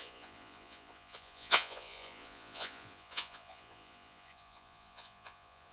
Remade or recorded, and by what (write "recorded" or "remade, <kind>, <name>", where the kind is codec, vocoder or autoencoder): remade, vocoder, Vocos